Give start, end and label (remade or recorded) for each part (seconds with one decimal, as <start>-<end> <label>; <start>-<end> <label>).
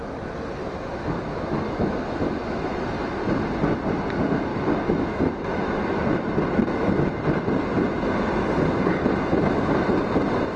0.0-0.6 recorded; 0.6-3.1 remade; 3.1-4.5 recorded; 4.5-5.8 remade; 5.8-10.6 recorded